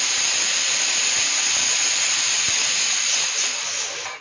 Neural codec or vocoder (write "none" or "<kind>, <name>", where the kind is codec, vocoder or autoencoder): none